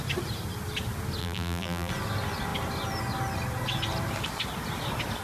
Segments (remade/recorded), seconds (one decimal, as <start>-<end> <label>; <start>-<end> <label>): 0.0-1.2 recorded; 1.2-1.9 remade; 1.9-5.2 recorded